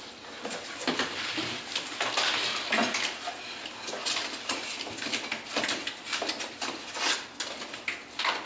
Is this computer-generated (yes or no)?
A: no